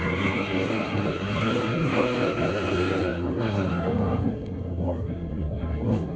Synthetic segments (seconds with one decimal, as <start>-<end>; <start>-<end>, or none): 0.0-6.2